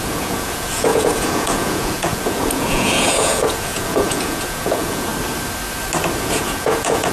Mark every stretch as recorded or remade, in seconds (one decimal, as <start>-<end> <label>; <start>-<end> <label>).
0.0-5.1 remade; 5.1-6.2 recorded; 6.2-7.1 remade